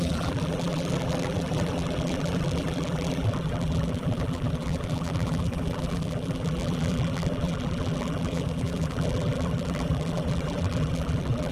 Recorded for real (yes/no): no